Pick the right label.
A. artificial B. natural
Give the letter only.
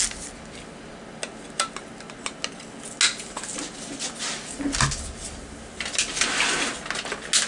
B